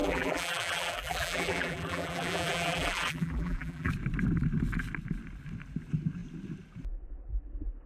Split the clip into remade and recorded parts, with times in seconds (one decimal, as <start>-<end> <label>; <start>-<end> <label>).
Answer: 0.0-3.9 remade; 3.9-7.9 recorded